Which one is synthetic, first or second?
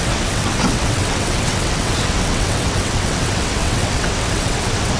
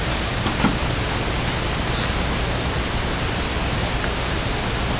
first